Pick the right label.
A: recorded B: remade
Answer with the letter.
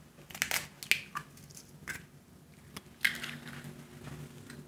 A